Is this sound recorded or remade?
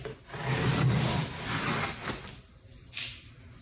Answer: recorded